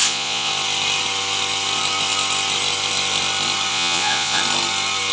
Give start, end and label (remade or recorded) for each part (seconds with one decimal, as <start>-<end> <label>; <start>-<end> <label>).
0.0-0.5 remade; 0.5-3.7 recorded; 3.7-4.4 remade; 4.4-5.1 recorded